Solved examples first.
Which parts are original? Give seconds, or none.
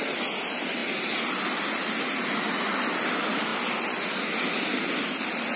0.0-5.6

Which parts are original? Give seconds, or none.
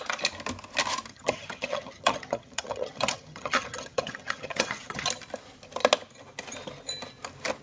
0.0-1.1; 5.1-7.6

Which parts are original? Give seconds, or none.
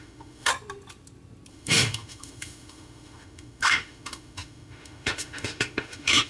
0.5-1.5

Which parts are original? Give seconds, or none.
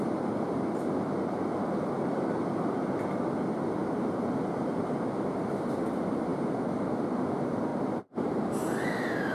0.0-7.7; 8.5-9.3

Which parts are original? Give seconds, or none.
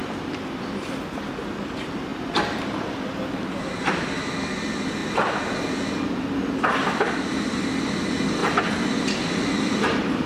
0.0-10.3